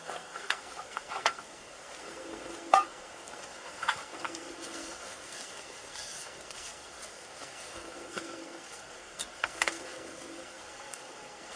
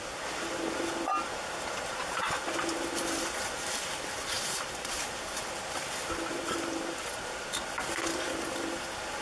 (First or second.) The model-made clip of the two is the first